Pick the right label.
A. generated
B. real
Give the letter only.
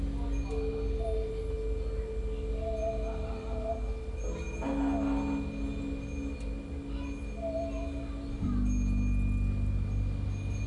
B